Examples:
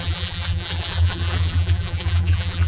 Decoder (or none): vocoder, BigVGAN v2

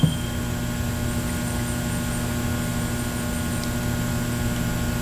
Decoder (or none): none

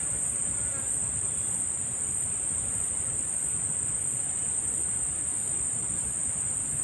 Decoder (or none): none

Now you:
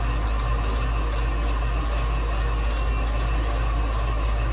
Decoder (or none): none